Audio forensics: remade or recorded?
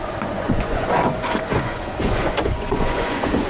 remade